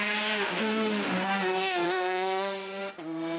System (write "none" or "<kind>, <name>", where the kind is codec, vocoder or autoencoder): autoencoder, DAC-VAE